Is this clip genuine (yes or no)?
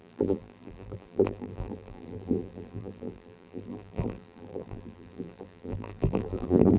no